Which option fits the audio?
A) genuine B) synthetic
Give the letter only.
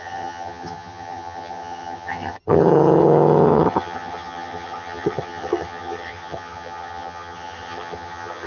B